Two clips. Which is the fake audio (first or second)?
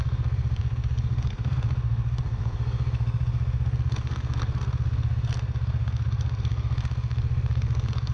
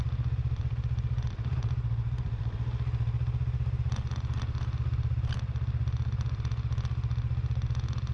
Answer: first